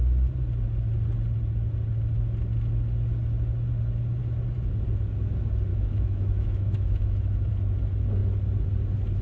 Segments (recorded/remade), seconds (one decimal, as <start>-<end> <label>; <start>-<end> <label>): 0.0-5.7 recorded; 5.7-7.5 remade; 7.5-9.2 recorded